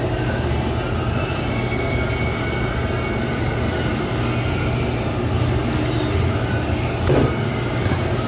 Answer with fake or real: real